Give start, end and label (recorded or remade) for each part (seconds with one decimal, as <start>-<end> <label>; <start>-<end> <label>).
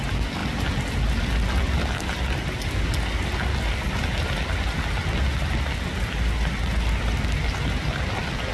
0.0-8.5 recorded